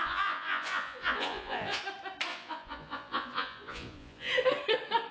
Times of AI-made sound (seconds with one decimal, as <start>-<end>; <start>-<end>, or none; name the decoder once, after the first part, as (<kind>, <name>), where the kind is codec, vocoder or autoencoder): 0.0-1.8 (vocoder, Vocos); 2.3-4.3